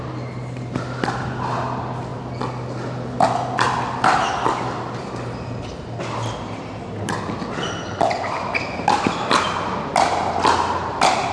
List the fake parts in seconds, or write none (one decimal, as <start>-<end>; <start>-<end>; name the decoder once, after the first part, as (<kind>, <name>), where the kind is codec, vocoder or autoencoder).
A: none